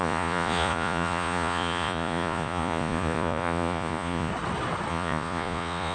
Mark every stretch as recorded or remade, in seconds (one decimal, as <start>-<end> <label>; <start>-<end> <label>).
0.0-4.3 remade; 4.3-4.9 recorded; 4.9-5.9 remade